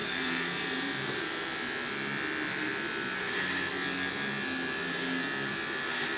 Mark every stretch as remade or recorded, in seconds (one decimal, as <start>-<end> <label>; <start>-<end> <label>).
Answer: 0.0-1.5 remade; 1.5-6.2 recorded